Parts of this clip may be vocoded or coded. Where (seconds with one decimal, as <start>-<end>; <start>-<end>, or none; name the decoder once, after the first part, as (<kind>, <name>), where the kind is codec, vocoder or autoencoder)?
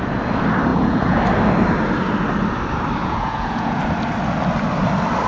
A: 0.7-1.2 (vocoder, Vocos); 3.0-3.8